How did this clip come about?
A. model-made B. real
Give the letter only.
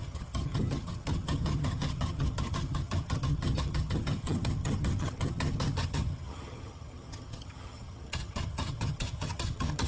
A